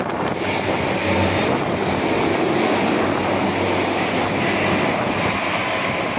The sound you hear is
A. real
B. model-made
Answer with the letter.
A